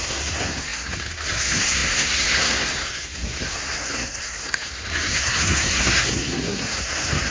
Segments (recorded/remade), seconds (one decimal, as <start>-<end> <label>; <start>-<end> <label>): 0.0-7.3 remade

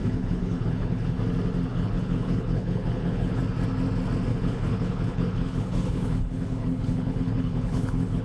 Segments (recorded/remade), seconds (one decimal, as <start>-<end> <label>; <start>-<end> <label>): 0.0-1.2 remade; 1.2-1.7 recorded; 1.7-3.4 remade; 3.4-4.3 recorded; 4.3-8.2 remade

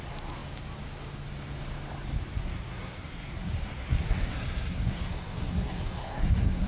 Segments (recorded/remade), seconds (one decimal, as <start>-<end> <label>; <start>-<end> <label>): 0.0-2.4 recorded; 2.4-6.7 remade

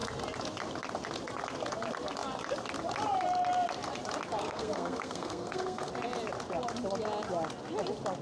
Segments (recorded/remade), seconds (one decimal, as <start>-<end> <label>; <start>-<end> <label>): 0.0-4.4 recorded; 4.4-5.9 remade; 5.9-8.2 recorded

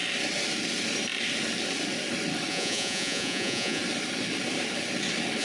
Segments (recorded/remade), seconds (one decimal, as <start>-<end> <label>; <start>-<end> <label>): 0.0-2.5 recorded; 2.5-3.8 remade; 3.8-5.4 recorded